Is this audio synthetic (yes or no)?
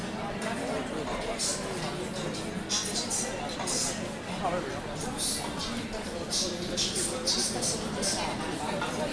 no